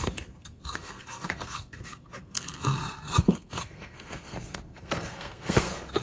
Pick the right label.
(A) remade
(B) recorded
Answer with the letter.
A